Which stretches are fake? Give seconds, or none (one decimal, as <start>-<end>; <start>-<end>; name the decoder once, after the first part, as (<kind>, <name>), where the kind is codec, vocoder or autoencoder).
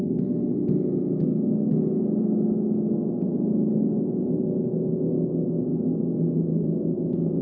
5.7-7.4 (autoencoder, DAC-VAE)